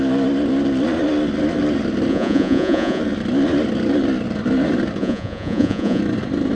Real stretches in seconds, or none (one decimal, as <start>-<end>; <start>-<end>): 0.0-2.1; 3.0-5.0; 6.0-6.6